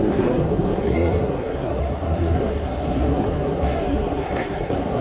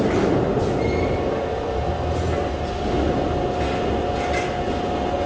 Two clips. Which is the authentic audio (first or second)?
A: second